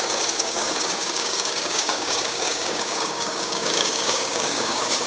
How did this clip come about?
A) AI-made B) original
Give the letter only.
A